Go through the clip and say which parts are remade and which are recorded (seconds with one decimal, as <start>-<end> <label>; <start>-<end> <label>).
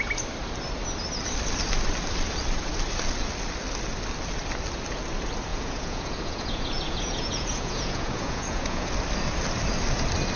0.0-5.5 recorded; 5.5-8.9 remade; 8.9-10.4 recorded